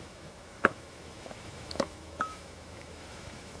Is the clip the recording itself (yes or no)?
no